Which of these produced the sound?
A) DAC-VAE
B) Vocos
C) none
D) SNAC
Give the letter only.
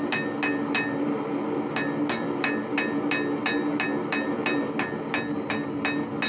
C